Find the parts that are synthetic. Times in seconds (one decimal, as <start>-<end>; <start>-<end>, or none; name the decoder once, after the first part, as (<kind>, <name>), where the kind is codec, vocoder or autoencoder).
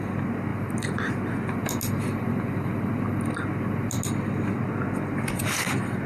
none